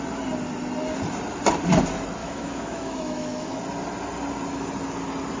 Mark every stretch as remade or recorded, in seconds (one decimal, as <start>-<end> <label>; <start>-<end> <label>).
0.0-2.2 recorded; 2.2-3.6 remade; 3.6-5.4 recorded